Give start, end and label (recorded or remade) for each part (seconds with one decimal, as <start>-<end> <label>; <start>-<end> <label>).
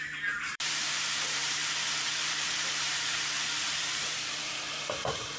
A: 0.0-1.6 remade; 1.6-2.4 recorded; 2.4-5.4 remade